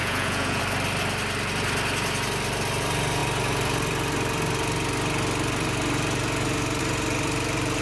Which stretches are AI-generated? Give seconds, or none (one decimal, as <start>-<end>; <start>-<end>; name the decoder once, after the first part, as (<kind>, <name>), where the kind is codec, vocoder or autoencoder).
0.0-0.6 (vocoder, Vocos)